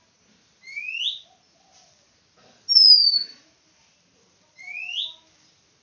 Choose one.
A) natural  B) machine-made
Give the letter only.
A